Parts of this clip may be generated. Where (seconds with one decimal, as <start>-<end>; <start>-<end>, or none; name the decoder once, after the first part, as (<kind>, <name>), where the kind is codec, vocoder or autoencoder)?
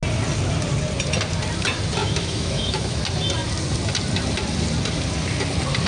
2.0-3.0 (autoencoder, DAC-VAE)